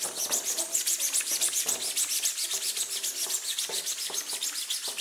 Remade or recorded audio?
recorded